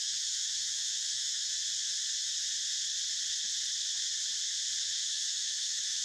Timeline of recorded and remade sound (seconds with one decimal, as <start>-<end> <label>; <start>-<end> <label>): 0.0-1.6 remade; 1.6-4.8 recorded; 4.8-6.0 remade